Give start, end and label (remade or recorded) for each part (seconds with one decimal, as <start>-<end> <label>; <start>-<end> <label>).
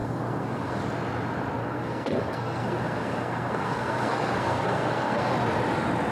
0.0-0.8 remade; 0.8-1.6 recorded; 1.6-5.3 remade; 5.3-6.1 recorded